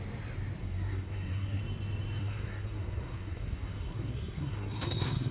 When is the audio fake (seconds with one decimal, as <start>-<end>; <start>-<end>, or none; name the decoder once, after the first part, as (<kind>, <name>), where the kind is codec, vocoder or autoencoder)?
0.6-1.6 (codec, SNAC); 2.2-5.3